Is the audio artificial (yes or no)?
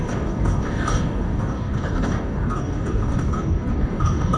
yes